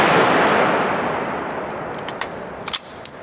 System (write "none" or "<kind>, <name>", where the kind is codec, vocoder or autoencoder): vocoder, BigVGAN v2